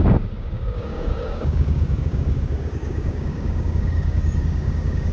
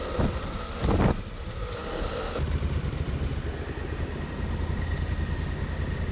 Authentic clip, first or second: second